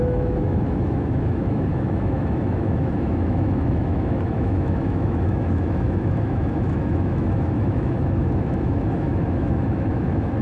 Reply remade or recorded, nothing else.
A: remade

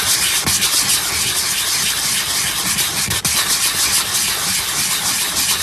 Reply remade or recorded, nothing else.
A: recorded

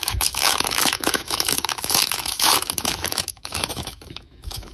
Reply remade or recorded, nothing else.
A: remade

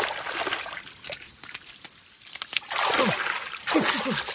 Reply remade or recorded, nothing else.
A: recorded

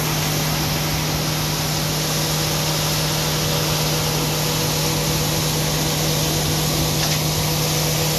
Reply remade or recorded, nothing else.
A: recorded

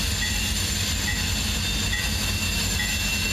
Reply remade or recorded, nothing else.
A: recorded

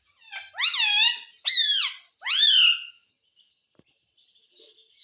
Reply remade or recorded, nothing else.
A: recorded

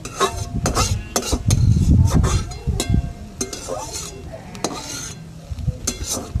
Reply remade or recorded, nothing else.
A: recorded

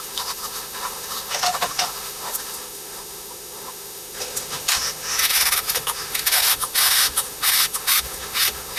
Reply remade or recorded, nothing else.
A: remade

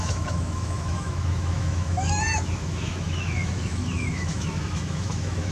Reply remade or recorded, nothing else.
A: remade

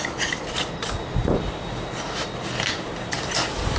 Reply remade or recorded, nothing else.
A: recorded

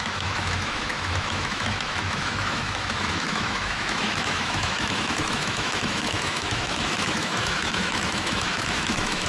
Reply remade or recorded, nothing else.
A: remade